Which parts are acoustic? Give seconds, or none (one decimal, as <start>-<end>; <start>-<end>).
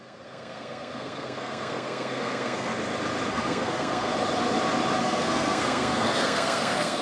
2.7-3.3; 4.1-5.0